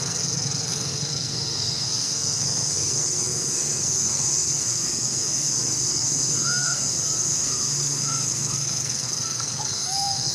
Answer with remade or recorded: remade